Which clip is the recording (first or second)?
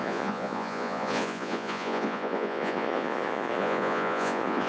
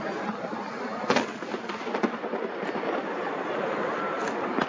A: second